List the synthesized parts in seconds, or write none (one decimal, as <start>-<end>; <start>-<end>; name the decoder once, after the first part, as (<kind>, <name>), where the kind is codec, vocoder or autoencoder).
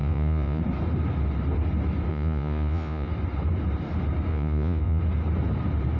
0.0-0.6 (vocoder, Vocos); 2.1-3.1; 4.3-5.0